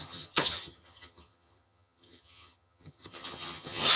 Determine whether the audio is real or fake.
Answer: fake